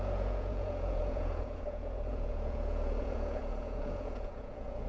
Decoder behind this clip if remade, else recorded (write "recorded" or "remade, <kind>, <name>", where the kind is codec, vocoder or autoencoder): remade, vocoder, Vocos